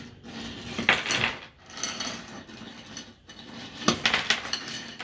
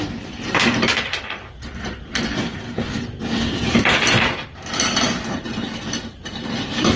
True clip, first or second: first